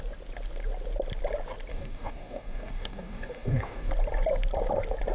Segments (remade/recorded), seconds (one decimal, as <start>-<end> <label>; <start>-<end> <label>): 0.0-1.7 recorded; 1.7-3.9 remade; 3.9-5.1 recorded